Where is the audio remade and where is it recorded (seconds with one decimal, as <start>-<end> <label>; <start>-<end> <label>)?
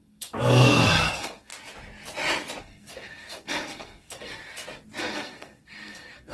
0.0-1.5 remade; 1.5-2.6 recorded; 2.6-4.3 remade; 4.3-5.0 recorded; 5.0-6.3 remade